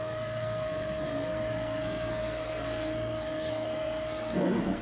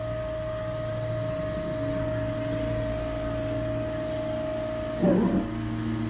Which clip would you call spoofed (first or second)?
first